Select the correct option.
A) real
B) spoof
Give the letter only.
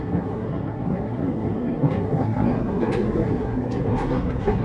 B